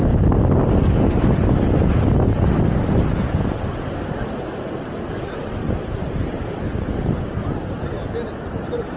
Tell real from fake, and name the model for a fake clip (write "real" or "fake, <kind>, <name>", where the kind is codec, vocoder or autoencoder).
real